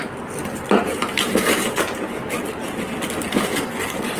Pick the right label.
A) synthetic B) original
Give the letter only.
B